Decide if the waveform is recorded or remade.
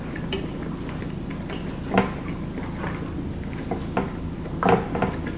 recorded